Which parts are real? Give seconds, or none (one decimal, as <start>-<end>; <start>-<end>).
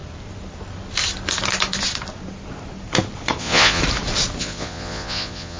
0.0-3.4; 3.8-4.4